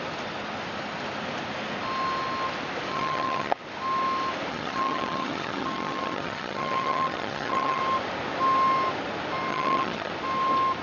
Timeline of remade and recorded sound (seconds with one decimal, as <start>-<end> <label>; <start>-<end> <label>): 0.0-2.9 recorded; 2.9-3.6 remade; 3.6-4.5 recorded; 4.5-7.8 remade; 7.8-9.5 recorded; 9.5-10.1 remade; 10.1-10.8 recorded